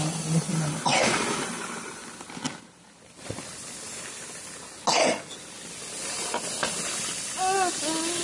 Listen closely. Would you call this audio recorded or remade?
recorded